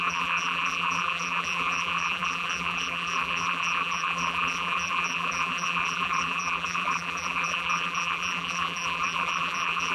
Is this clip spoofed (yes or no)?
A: yes